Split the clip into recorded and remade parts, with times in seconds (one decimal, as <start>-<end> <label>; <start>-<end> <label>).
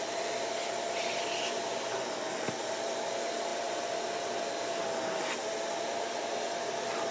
0.0-7.1 recorded